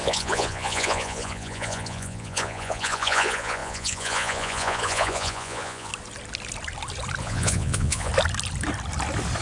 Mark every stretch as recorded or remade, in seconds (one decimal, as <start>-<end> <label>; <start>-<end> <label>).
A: 0.0-5.9 remade; 5.9-7.2 recorded; 7.2-8.1 remade; 8.1-9.4 recorded